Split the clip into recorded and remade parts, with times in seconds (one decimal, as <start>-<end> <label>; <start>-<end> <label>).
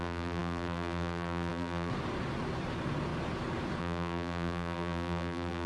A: 0.0-1.9 remade; 1.9-3.8 recorded; 3.8-5.7 remade